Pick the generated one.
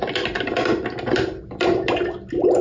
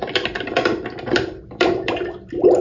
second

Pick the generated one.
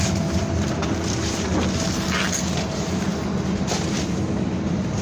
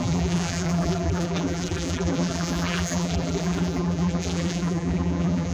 second